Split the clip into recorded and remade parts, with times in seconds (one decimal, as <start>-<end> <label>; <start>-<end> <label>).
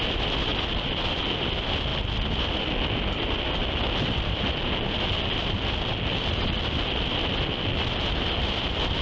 0.0-0.5 recorded; 0.5-1.2 remade; 1.2-9.0 recorded